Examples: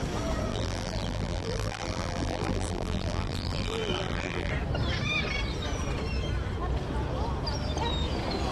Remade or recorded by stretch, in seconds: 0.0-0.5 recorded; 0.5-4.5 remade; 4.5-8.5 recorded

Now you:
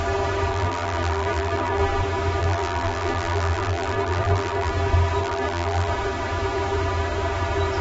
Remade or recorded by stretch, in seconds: 0.0-0.5 recorded; 0.5-1.8 remade; 1.8-2.4 recorded; 2.4-4.7 remade; 4.7-5.2 recorded; 5.2-5.9 remade; 5.9-7.8 recorded